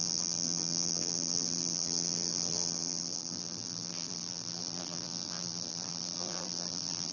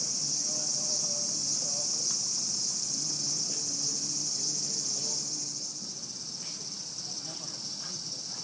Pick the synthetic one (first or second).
first